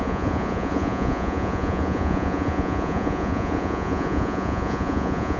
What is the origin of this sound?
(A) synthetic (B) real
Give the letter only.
A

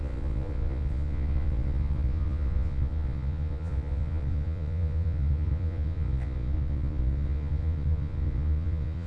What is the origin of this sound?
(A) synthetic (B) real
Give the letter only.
A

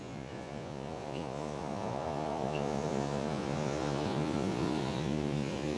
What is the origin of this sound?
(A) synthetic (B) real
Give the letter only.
A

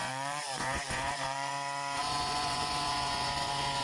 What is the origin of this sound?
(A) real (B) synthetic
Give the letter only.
B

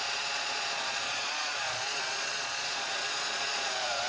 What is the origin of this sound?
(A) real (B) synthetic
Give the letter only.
B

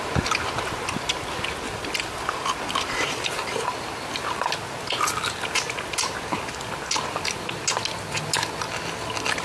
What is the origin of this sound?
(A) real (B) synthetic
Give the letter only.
A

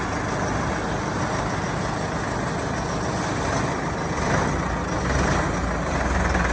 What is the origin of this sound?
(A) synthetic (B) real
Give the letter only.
B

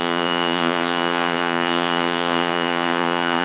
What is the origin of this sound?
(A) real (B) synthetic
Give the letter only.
B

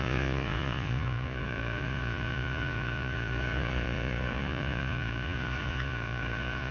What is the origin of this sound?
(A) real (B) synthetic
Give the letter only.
B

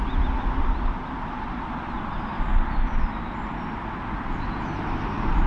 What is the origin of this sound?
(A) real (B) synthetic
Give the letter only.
A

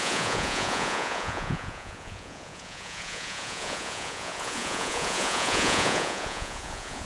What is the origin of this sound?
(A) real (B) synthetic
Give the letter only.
B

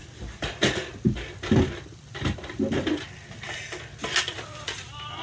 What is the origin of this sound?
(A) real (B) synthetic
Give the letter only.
A